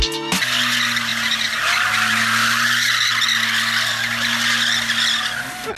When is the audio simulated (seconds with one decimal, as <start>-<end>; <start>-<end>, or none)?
none